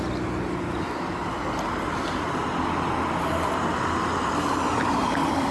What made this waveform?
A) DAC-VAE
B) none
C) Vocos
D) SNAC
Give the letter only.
B